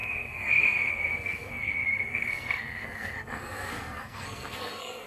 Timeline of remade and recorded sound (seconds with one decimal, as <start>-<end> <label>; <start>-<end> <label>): 0.0-5.1 remade